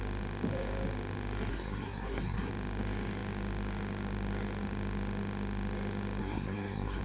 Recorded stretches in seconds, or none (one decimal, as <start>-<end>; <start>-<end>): 0.0-1.5; 2.5-6.2